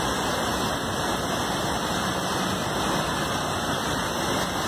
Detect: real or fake real